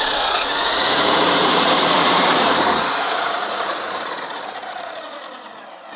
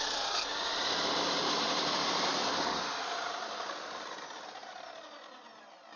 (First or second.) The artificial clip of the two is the first